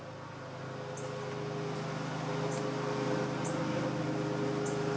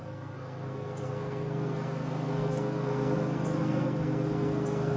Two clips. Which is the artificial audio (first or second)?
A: second